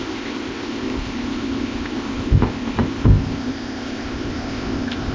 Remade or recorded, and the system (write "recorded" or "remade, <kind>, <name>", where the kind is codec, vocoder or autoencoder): remade, codec, ZipCodec